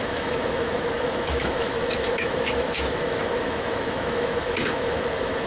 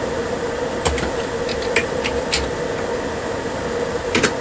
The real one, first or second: second